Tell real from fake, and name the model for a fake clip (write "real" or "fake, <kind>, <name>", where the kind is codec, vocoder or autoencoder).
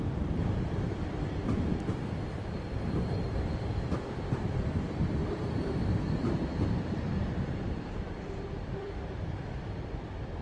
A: fake, vocoder, BigVGAN v2